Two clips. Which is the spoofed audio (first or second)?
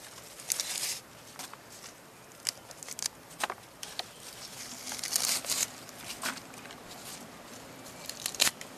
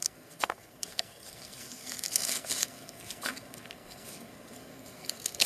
second